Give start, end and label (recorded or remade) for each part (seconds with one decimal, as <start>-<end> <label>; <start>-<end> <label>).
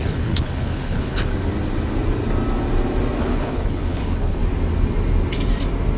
0.0-1.3 remade; 1.3-3.2 recorded; 3.2-4.4 remade; 4.4-6.0 recorded